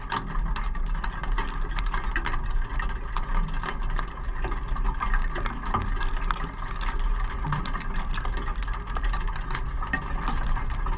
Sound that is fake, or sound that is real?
real